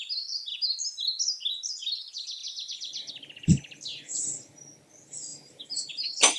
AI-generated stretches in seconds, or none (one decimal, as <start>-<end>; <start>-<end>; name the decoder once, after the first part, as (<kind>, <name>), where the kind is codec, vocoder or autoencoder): 2.4-3.1 (vocoder, BigVGAN v2); 5.3-5.9